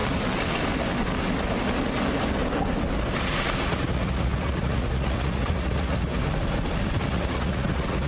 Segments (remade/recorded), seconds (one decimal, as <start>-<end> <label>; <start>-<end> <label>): 0.0-3.2 recorded; 3.2-6.1 remade; 6.1-7.1 recorded; 7.1-8.1 remade